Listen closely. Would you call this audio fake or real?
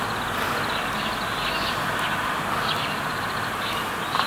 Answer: real